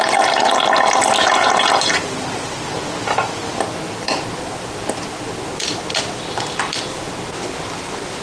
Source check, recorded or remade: remade